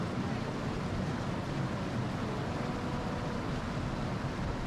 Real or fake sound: real